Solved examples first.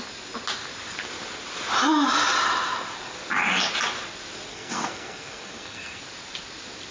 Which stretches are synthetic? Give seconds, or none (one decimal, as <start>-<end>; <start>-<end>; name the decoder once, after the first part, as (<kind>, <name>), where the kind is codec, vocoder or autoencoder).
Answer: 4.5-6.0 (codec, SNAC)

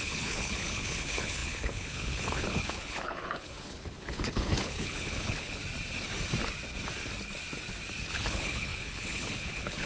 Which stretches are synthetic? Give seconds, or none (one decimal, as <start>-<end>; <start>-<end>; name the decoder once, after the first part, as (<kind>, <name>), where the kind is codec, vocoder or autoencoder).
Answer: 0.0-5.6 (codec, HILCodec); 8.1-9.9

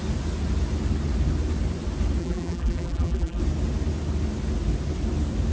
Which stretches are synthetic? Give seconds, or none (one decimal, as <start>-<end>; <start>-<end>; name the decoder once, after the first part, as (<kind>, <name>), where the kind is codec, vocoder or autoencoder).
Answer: 2.2-3.4 (vocoder, BigVGAN v2)

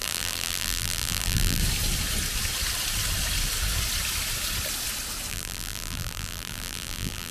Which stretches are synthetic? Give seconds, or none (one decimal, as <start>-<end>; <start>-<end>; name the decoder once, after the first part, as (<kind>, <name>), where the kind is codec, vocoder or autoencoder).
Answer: 0.0-1.6 (vocoder, BigVGAN v2); 5.3-7.3